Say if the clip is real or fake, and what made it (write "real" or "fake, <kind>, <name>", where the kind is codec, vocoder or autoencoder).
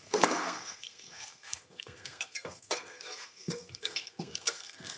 fake, codec, SNAC